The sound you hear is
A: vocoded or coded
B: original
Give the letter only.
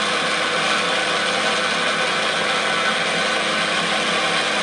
B